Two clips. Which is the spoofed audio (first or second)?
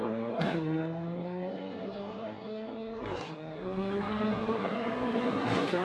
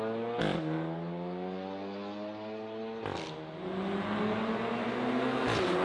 first